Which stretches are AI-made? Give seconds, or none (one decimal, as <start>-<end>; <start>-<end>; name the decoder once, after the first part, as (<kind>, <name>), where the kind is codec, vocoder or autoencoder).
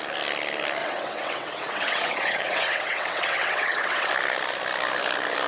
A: 0.8-4.1 (vocoder, WaveNeXt)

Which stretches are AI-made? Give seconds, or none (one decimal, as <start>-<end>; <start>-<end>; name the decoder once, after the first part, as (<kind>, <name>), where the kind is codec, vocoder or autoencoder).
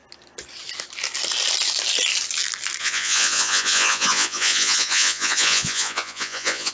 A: 2.8-6.7 (vocoder, Vocos)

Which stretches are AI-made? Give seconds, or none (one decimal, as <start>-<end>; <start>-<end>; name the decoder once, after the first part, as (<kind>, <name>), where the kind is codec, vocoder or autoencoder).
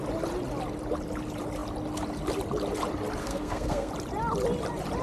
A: 3.2-3.9 (codec, SNAC)